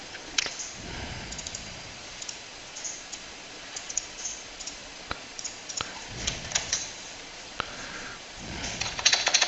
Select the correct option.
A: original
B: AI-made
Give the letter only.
B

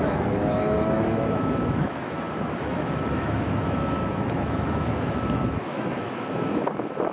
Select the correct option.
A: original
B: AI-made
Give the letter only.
B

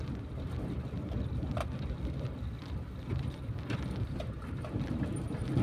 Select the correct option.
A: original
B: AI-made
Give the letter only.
A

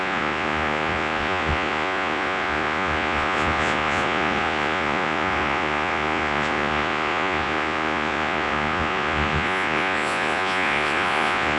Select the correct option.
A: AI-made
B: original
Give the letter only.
A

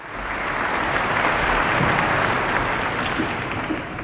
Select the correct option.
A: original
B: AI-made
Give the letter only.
A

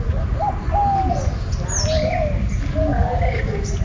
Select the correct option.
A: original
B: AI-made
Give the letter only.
A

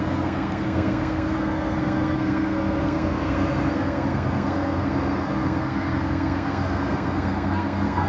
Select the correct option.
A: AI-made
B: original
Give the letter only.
A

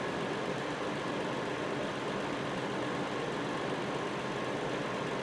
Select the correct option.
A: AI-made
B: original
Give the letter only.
B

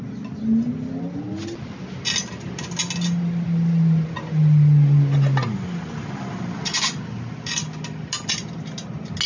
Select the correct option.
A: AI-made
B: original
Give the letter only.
B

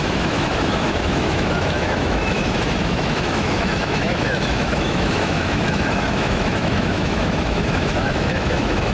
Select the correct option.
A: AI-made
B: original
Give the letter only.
A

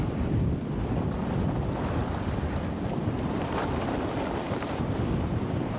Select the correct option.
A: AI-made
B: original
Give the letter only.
A